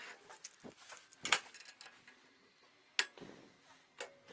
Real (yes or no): yes